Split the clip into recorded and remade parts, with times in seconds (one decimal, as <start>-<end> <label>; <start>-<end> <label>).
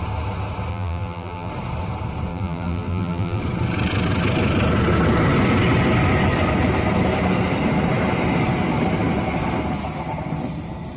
0.0-0.7 recorded; 0.7-1.5 remade; 1.5-2.3 recorded; 2.3-3.4 remade; 3.4-11.0 recorded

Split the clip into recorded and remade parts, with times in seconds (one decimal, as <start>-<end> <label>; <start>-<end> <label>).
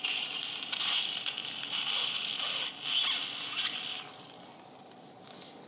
0.0-5.7 recorded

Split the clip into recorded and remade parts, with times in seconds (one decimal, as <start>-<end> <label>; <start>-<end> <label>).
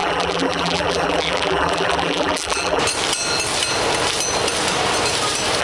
0.0-2.8 remade; 2.8-5.6 recorded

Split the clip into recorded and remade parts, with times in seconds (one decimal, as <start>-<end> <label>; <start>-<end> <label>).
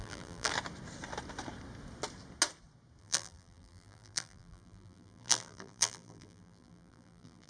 0.0-0.5 remade; 0.5-3.0 recorded; 3.0-7.5 remade